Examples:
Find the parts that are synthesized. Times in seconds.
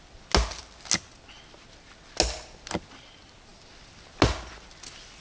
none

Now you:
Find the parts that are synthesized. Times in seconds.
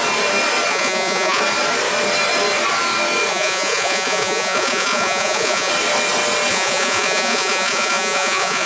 0.7-1.4 (vocoder, Vocos); 3.3-5.7; 6.5-8.7